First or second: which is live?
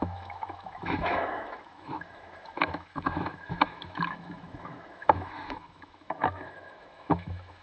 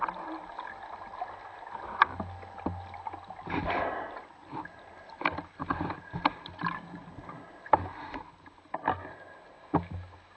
second